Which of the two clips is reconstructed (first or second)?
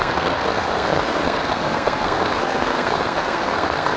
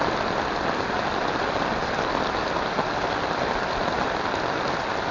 first